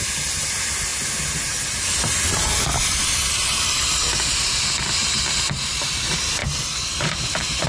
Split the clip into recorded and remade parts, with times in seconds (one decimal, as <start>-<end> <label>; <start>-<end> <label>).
0.0-0.9 remade; 0.9-5.5 recorded; 5.5-6.4 remade; 6.4-7.3 recorded; 7.3-7.7 remade